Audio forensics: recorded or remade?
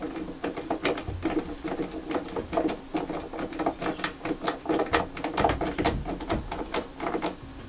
recorded